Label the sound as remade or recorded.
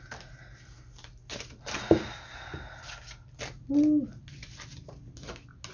recorded